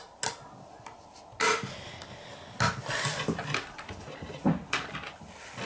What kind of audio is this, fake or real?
real